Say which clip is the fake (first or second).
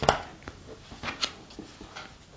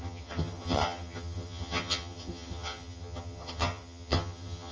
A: second